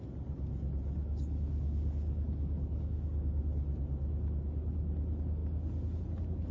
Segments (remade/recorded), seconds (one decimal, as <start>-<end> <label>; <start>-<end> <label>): 0.0-1.0 recorded; 1.0-3.4 remade; 3.4-6.5 recorded